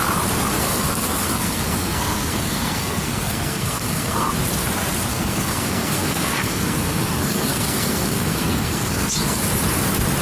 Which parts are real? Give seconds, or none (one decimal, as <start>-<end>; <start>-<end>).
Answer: 0.0-0.5; 4.3-5.1; 9.4-10.2